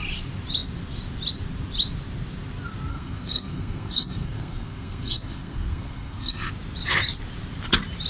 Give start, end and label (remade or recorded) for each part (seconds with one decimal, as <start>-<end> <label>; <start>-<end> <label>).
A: 0.0-2.9 recorded; 2.9-6.5 remade; 6.5-8.1 recorded